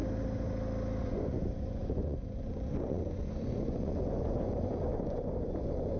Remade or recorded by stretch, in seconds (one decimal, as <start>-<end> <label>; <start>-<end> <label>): 0.0-1.0 recorded; 1.0-6.0 remade